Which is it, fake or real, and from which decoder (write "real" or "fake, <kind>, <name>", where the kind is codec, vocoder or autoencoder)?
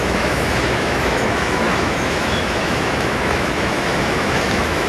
fake, autoencoder, DAC-VAE